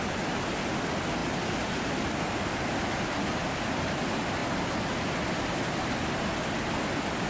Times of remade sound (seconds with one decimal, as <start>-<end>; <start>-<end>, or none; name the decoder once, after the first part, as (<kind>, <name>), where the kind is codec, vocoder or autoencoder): none